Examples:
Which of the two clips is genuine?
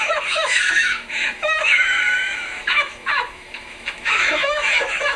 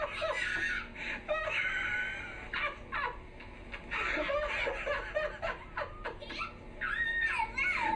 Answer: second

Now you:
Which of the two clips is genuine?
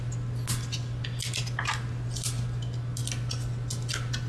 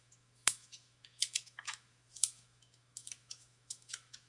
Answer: first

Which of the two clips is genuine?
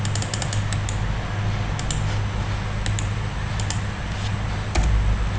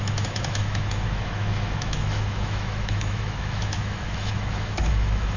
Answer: first